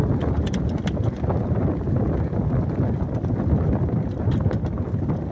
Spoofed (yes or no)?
no